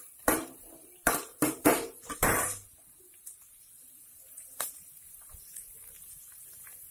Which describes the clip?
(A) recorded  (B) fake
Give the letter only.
B